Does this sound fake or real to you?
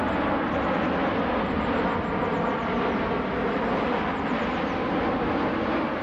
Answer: real